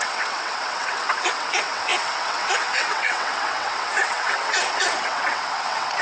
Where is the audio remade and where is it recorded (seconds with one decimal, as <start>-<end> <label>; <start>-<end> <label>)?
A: 0.0-6.0 remade